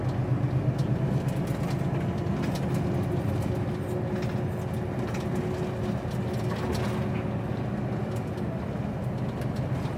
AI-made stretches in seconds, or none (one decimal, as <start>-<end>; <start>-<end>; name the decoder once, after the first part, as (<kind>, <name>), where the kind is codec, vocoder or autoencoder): none